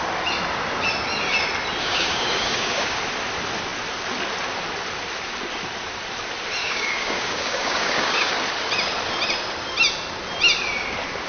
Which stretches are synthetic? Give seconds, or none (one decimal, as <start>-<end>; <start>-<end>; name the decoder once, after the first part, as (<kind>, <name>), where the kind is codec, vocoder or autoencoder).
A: 1.8-3.0 (codec, DAC); 6.6-8.3